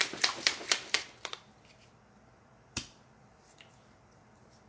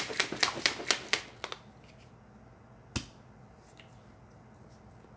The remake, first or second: first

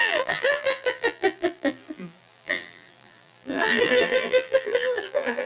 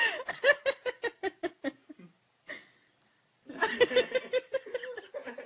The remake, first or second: first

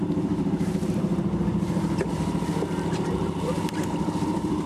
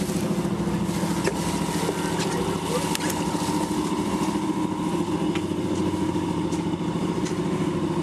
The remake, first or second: first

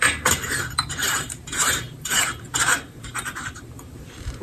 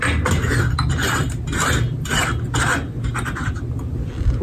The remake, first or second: first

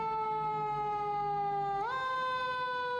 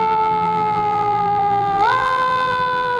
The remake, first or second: second